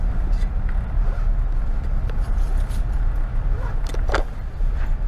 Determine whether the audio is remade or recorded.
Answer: remade